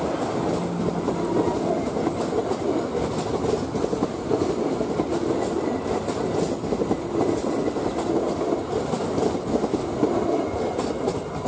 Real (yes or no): yes